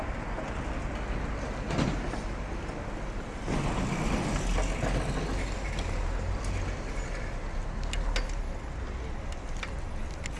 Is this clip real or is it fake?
real